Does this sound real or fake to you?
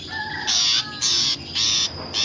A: real